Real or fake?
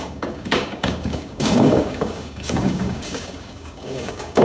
fake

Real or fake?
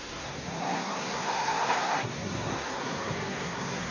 fake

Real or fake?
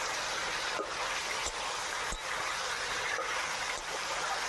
real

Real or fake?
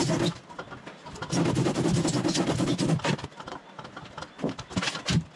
real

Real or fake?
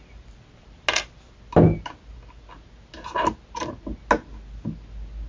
real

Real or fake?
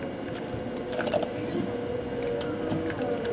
real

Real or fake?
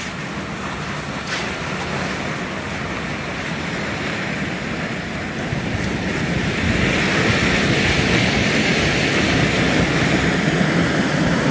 real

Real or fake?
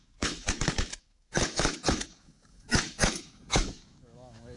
fake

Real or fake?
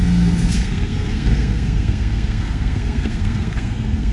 fake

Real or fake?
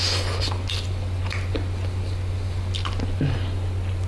real